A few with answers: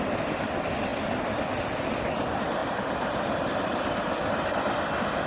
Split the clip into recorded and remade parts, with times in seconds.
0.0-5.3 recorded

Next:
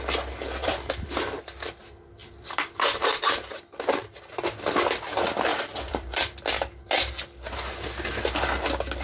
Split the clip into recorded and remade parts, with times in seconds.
0.0-0.6 recorded; 0.6-1.2 remade; 1.2-2.2 recorded; 2.2-4.3 remade; 4.3-5.5 recorded; 5.5-6.4 remade; 6.4-9.0 recorded

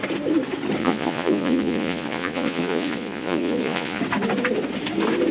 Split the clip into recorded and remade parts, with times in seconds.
0.0-0.8 recorded; 0.8-4.0 remade; 4.0-5.3 recorded

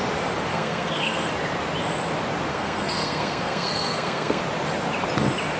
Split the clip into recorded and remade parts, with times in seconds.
0.0-0.5 recorded; 0.5-1.3 remade; 1.3-2.5 recorded; 2.5-4.4 remade; 4.4-5.6 recorded

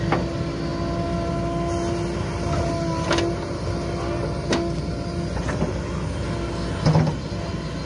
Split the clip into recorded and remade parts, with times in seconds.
0.0-7.9 recorded